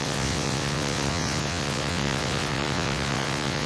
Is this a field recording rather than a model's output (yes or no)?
no